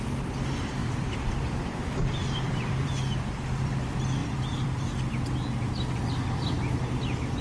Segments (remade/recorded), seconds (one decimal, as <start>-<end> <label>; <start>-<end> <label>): 0.0-0.8 recorded; 0.8-3.7 remade; 3.7-4.2 recorded; 4.2-4.8 remade; 4.8-7.4 recorded